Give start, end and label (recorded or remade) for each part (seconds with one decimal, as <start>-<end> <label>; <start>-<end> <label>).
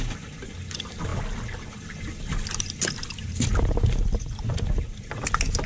0.0-5.7 recorded